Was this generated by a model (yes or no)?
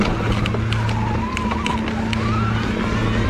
no